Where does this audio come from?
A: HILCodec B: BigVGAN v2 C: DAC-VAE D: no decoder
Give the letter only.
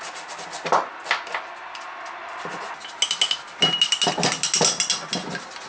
D